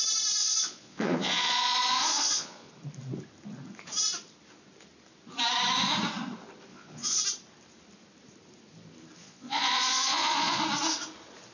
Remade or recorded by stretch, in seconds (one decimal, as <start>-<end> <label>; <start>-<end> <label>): 0.0-0.4 recorded; 0.4-2.7 remade; 2.7-6.7 recorded; 6.7-7.2 remade; 7.2-9.2 recorded; 9.2-10.6 remade; 10.6-11.5 recorded